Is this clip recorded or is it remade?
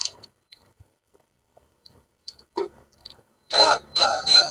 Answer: remade